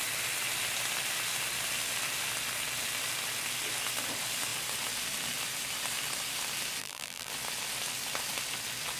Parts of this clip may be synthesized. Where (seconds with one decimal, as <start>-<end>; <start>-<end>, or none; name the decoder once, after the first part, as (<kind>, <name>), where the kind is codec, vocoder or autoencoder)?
6.8-7.3 (vocoder, BigVGAN v2)